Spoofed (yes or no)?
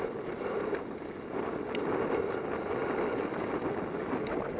no